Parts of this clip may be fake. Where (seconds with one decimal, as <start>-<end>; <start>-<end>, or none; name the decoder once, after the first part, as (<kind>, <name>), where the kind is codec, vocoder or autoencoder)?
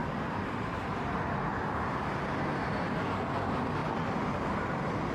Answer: 0.0-1.5 (vocoder, BigVGAN v2); 3.8-5.1